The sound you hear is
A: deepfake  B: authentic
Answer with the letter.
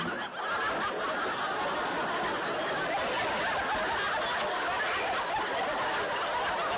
B